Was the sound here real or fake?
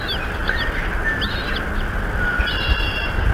real